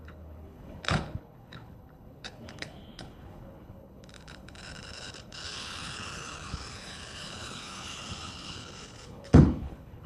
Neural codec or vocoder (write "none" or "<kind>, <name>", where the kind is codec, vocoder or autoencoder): codec, HILCodec